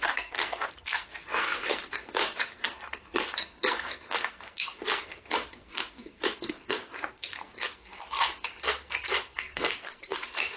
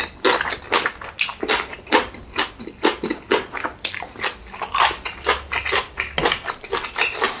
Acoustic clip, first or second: second